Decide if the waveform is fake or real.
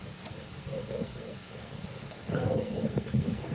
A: fake